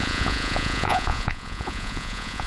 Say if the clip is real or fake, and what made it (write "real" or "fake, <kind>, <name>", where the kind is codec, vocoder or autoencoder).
fake, vocoder, Vocos